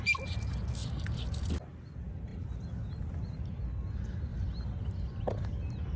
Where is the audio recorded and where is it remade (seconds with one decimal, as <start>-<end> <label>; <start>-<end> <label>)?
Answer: 0.0-0.8 recorded; 0.8-1.5 remade; 1.5-4.3 recorded; 4.3-5.4 remade; 5.4-6.0 recorded